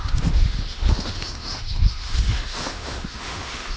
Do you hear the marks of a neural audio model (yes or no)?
yes